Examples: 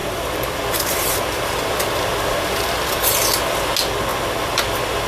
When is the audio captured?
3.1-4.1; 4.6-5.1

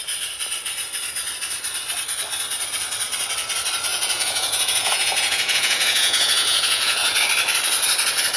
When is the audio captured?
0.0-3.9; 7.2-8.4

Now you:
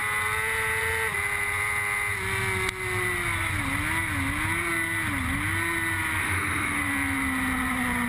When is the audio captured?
0.0-6.2; 6.8-8.1